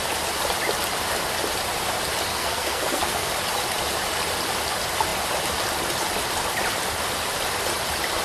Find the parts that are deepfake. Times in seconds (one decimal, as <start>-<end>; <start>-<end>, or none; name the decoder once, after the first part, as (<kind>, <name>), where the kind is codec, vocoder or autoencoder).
2.3-3.3 (codec, SNAC)

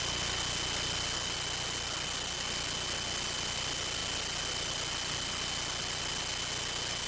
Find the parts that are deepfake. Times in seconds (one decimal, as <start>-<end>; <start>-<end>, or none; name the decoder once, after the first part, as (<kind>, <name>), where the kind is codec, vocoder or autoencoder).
none